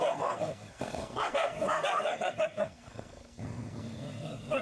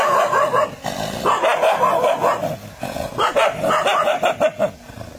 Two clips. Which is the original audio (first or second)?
second